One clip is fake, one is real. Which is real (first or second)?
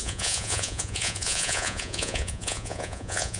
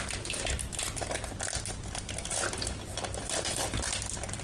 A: second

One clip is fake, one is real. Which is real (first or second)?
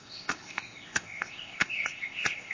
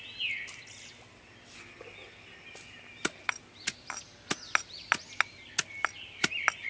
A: second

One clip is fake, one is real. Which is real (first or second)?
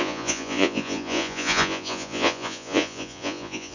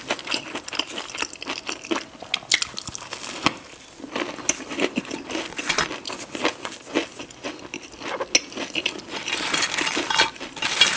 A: second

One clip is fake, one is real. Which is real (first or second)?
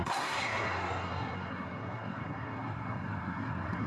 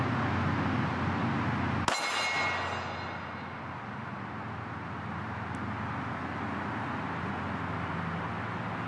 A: second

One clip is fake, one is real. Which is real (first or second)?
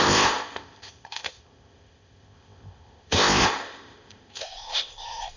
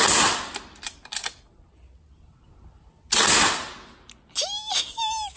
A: second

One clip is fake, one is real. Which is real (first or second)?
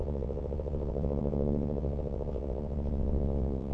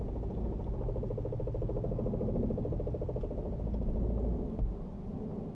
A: second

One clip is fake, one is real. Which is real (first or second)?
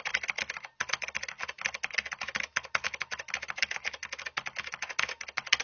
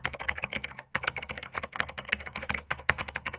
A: first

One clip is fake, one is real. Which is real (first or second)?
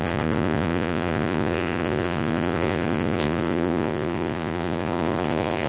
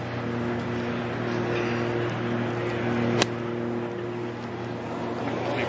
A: second